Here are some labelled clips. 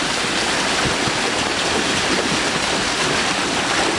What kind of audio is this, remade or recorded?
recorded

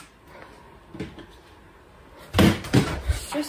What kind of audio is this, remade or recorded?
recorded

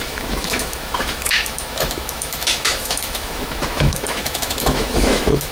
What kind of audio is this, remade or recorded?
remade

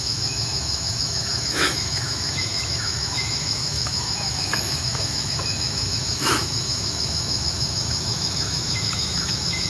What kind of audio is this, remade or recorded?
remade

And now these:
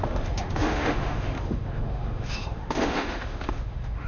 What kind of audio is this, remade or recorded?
remade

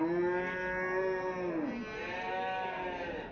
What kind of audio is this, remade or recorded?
recorded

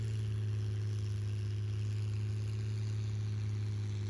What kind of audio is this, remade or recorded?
recorded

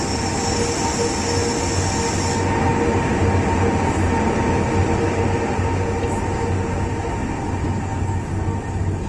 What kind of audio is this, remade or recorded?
recorded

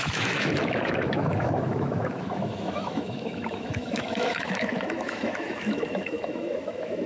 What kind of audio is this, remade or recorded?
remade